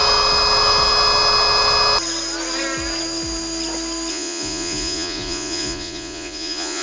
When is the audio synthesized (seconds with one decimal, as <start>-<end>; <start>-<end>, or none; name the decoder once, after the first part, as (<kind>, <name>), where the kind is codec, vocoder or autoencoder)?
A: 4.1-6.8 (vocoder, Vocos)